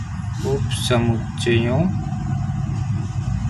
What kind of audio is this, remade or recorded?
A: recorded